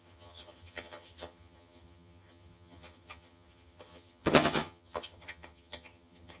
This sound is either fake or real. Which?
fake